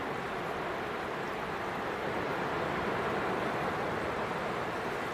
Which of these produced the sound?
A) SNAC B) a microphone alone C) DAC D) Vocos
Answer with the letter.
B